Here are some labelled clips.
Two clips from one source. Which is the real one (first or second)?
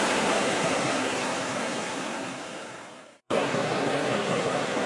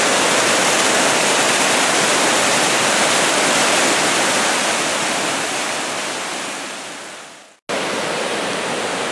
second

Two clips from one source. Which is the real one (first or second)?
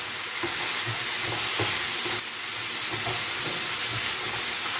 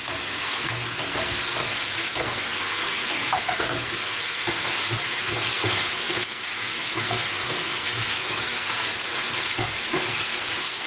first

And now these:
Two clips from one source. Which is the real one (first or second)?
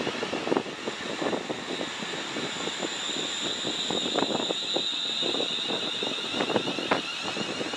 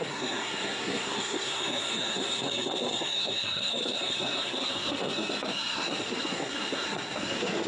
first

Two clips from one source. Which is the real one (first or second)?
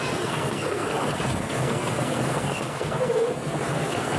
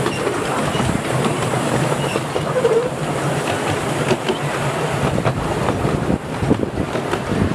second